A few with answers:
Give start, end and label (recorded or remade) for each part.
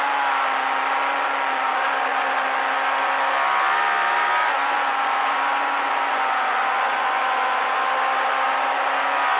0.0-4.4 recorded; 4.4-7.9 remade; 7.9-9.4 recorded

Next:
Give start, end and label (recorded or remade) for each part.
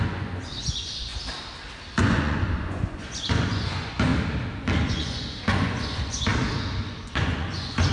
0.0-1.1 remade; 1.1-1.9 recorded; 1.9-4.1 remade; 4.1-4.9 recorded; 4.9-6.3 remade; 6.3-6.9 recorded; 6.9-7.9 remade